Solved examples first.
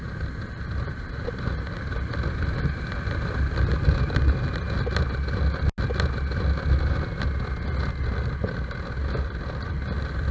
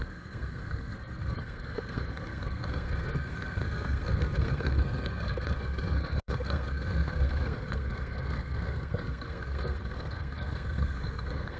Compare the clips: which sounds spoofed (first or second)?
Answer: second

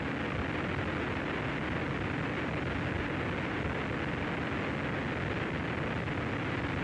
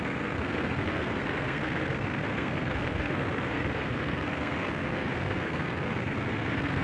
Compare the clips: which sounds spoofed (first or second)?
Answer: second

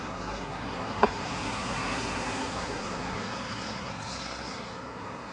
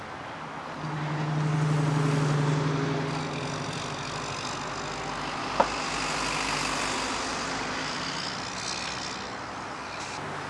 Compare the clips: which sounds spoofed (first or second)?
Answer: first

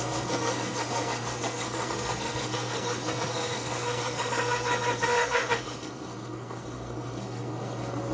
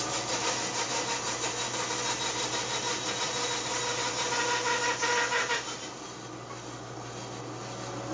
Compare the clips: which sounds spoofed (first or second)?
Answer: first